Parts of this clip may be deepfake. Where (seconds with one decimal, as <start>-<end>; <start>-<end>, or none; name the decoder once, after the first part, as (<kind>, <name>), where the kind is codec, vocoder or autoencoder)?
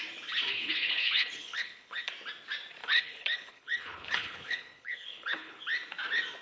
0.5-2.1 (codec, HILCodec); 2.8-5.6